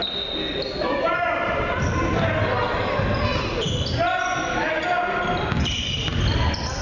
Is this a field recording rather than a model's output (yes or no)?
yes